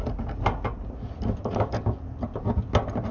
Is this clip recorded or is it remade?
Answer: recorded